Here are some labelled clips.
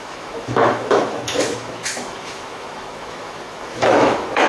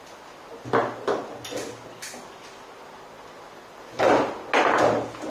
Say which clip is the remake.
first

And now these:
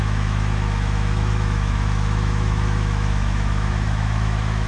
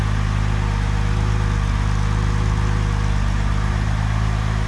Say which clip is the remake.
first